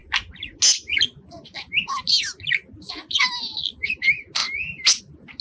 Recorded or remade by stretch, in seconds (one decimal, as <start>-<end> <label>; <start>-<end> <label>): 0.0-5.4 recorded